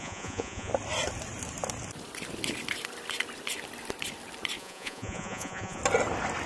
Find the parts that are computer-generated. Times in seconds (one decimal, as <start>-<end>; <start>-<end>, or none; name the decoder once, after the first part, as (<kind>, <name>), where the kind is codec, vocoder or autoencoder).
0.0-0.7 (vocoder, Vocos); 4.6-5.8